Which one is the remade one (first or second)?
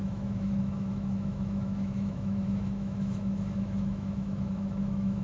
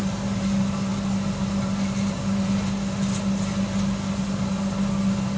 first